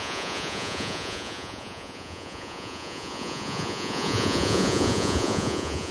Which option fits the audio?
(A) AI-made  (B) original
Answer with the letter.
A